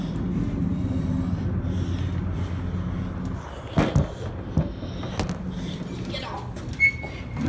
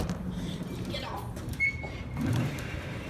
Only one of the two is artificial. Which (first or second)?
second